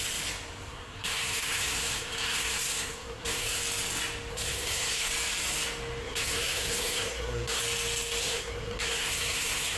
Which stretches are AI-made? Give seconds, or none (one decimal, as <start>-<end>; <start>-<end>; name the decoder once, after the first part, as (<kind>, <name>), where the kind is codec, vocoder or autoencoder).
0.7-3.6 (codec, SNAC); 4.3-5.1; 6.0-7.6; 8.2-9.8

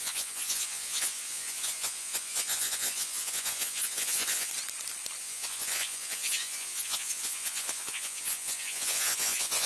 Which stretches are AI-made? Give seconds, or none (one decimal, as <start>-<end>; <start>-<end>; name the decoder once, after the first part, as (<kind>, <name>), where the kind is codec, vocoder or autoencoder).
0.0-4.5 (vocoder, Vocos); 5.2-9.7

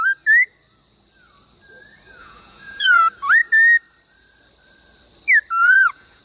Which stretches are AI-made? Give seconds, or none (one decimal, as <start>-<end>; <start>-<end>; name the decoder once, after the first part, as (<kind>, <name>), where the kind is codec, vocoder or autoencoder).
2.2-3.0 (vocoder, Vocos); 5.6-6.2

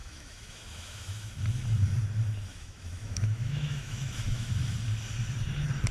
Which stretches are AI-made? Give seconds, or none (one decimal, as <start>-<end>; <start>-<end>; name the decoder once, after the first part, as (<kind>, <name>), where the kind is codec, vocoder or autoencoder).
0.0-1.3 (autoencoder, DAC-VAE); 2.5-4.5

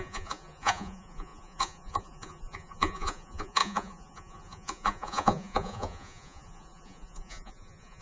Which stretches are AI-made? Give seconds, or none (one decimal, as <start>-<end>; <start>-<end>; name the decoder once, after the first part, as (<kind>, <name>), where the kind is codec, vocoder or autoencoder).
0.0-8.0 (vocoder, Vocos)

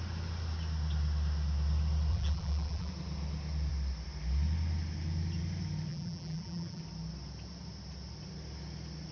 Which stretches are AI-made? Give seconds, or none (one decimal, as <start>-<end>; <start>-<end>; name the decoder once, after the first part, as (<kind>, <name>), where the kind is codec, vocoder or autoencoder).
2.1-2.9 (vocoder, BigVGAN v2); 5.9-6.8

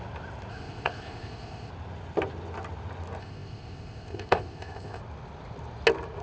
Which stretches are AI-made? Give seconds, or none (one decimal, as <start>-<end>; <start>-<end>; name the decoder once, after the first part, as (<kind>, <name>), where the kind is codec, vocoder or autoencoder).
0.5-1.7 (codec, ZipCodec); 3.2-5.0

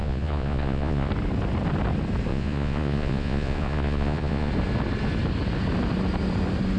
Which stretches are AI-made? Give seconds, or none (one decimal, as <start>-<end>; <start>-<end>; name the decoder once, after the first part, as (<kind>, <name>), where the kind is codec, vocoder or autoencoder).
0.0-1.1 (vocoder, Vocos); 2.3-4.5